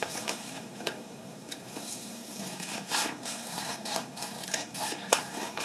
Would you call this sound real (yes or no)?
no